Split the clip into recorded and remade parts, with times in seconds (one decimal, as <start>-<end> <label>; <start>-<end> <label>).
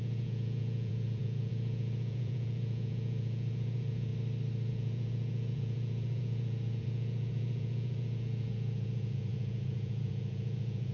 0.0-4.1 remade; 4.1-4.7 recorded; 4.7-10.9 remade